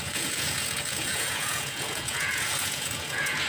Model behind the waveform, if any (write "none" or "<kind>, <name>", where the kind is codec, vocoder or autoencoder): vocoder, Vocos